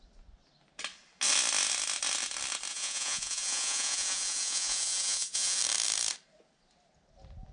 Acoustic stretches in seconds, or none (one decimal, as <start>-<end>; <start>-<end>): 0.0-2.7; 5.6-7.5